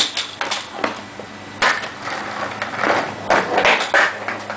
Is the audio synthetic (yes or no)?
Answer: no